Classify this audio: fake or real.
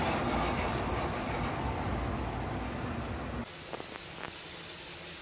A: real